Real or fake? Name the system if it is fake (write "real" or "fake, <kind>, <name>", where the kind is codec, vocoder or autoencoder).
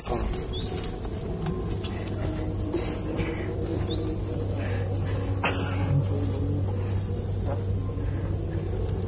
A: real